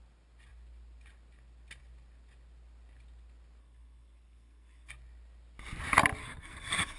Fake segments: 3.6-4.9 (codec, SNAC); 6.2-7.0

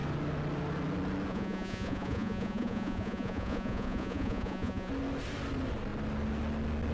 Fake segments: 1.3-4.9 (vocoder, Vocos)